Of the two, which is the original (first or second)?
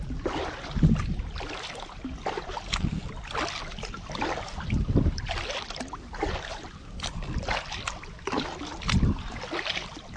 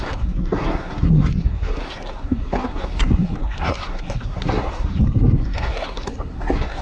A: first